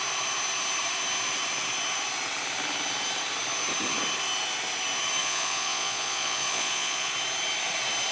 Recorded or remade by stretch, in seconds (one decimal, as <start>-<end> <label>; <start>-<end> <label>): 0.0-5.2 recorded; 5.2-7.1 remade; 7.1-8.1 recorded